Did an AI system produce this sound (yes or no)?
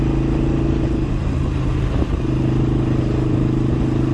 no